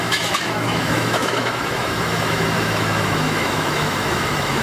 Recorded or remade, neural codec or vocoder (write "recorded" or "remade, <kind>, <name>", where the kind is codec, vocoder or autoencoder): remade, autoencoder, DAC-VAE